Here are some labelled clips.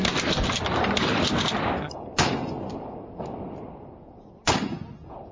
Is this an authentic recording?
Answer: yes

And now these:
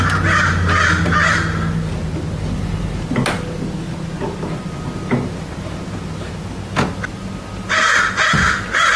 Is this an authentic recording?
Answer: yes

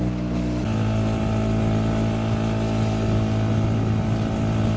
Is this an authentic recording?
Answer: yes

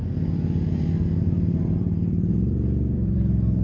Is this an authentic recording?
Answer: no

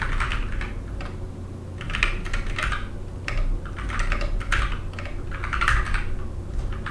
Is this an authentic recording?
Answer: yes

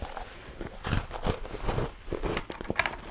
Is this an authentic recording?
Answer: no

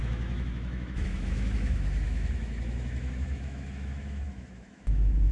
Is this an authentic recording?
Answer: no